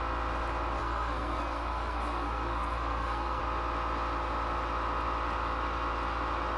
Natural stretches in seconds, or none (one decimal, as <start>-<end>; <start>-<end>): 0.0-0.8; 3.4-6.6